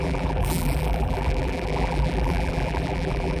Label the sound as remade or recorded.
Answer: remade